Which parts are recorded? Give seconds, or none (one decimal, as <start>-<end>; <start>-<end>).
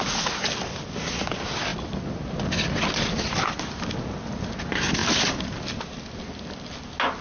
0.0-7.2